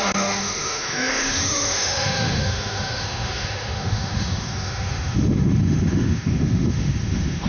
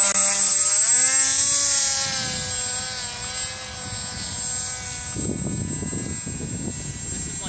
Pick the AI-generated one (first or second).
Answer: first